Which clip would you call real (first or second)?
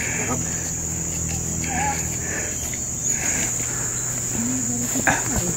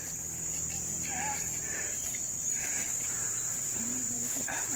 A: first